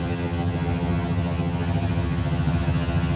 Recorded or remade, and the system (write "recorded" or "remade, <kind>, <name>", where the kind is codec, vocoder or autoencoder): remade, vocoder, HiFi-GAN